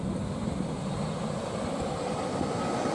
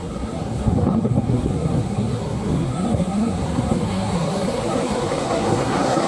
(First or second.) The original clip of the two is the first